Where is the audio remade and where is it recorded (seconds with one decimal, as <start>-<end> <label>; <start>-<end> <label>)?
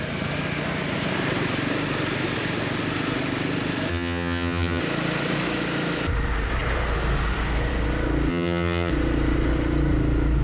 0.0-3.9 recorded; 3.9-4.8 remade; 4.8-8.3 recorded; 8.3-8.9 remade; 8.9-10.4 recorded